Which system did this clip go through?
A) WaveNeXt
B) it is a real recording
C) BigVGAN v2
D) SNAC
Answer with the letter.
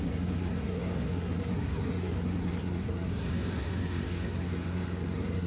D